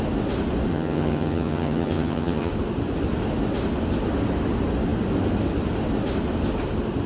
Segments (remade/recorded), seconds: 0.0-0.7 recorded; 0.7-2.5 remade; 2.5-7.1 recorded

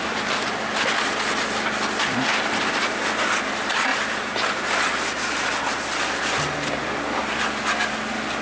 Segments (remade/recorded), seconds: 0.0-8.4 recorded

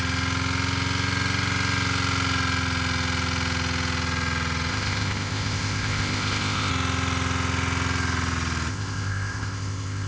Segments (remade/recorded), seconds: 0.0-4.7 recorded; 4.7-6.7 remade; 6.7-8.7 recorded; 8.7-10.1 remade

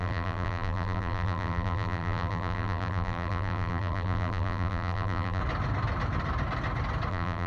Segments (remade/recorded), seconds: 0.0-5.4 remade; 5.4-7.1 recorded; 7.1-7.5 remade

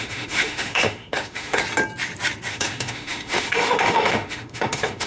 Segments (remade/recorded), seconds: 0.0-1.6 remade; 1.6-2.5 recorded; 2.5-5.1 remade

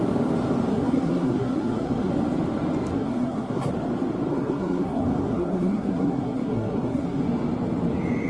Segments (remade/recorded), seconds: 0.0-0.7 recorded; 0.7-2.1 remade; 2.1-2.9 recorded; 2.9-3.7 remade; 3.7-4.3 recorded; 4.3-7.2 remade; 7.2-8.3 recorded